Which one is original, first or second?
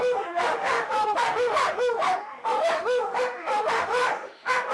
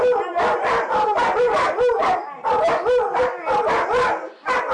second